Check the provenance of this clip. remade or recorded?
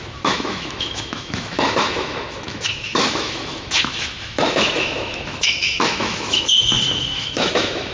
remade